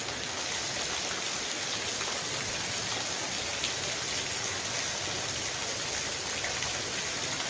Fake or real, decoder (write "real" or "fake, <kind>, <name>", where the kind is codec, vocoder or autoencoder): real